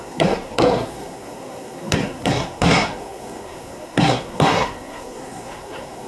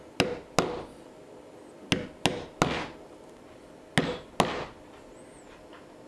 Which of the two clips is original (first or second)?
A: second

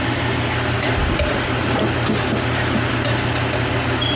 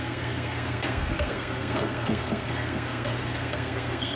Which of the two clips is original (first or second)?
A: first